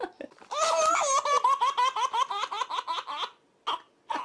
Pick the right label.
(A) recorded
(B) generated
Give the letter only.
A